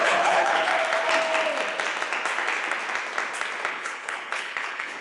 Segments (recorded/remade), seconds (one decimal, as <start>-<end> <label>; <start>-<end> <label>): 0.0-0.7 remade; 0.7-3.7 recorded; 3.7-5.0 remade